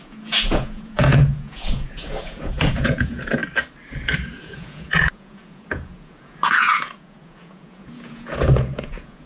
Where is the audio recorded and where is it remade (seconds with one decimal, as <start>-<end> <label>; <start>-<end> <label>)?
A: 0.0-3.4 remade; 3.4-4.4 recorded; 4.4-9.3 remade